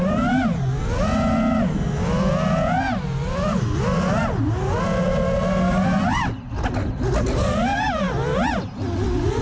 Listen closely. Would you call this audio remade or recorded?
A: recorded